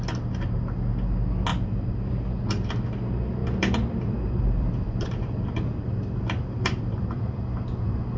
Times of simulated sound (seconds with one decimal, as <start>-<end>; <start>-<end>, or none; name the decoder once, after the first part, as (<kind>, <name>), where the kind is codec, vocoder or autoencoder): 1.5-2.1 (vocoder, BigVGAN v2); 3.4-7.4